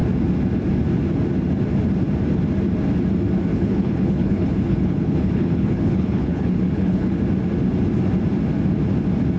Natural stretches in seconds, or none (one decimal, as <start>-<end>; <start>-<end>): 0.0-3.5; 7.2-9.4